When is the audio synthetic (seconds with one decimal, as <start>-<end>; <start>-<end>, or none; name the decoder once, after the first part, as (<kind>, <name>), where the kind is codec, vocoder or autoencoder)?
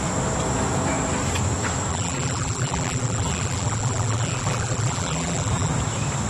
1.9-5.7 (vocoder, BigVGAN v2)